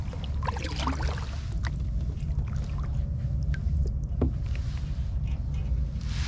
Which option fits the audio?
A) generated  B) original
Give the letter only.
B